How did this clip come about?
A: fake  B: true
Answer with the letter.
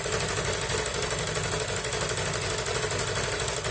B